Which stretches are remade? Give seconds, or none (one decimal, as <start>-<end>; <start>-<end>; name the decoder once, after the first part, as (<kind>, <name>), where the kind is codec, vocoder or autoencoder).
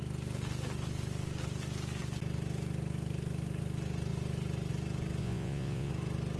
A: 5.2-5.9 (vocoder, Vocos)